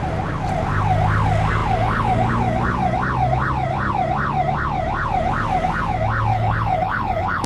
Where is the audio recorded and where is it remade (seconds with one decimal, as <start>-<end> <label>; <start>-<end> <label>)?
0.0-6.3 recorded; 6.3-7.5 remade